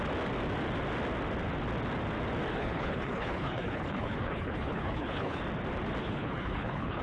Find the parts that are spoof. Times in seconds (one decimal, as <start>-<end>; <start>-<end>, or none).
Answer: 2.5-5.4; 6.0-7.0